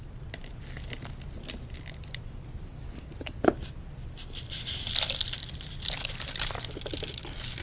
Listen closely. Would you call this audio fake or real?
real